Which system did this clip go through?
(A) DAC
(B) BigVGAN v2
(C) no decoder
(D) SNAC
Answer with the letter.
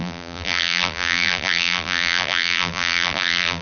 B